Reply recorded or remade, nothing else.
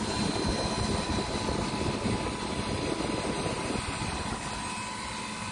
recorded